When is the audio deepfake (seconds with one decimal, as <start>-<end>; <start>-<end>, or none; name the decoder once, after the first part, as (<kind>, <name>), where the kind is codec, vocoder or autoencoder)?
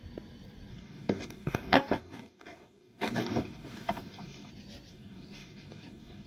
0.7-4.5 (codec, DAC); 4.9-6.3